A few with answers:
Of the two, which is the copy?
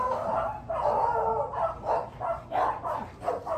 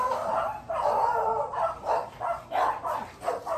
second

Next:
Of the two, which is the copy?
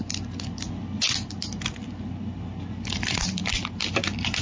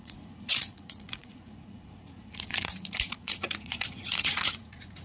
second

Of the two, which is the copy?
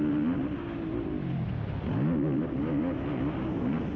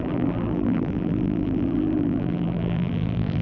second